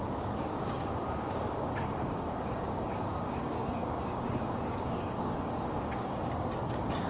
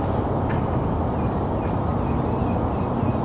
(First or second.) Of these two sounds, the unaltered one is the second